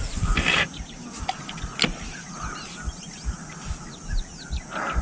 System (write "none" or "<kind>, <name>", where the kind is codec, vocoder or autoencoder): none